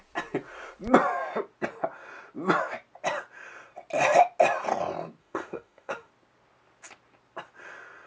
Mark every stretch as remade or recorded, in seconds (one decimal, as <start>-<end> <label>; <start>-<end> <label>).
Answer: 0.0-5.2 recorded; 5.2-6.1 remade; 6.1-8.1 recorded